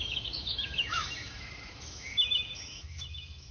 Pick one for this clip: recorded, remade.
remade